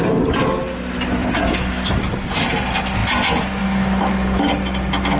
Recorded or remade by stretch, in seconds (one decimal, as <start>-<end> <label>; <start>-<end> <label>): 0.0-1.2 recorded; 1.2-1.7 remade; 1.7-3.0 recorded; 3.0-3.6 remade; 3.6-5.2 recorded